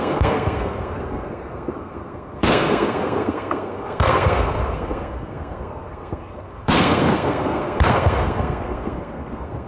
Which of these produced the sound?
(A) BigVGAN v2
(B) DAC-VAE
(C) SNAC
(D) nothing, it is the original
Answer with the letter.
C